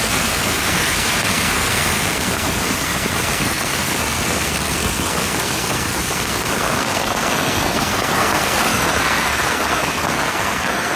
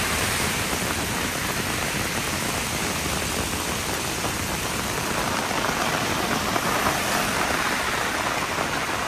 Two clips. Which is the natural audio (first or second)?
second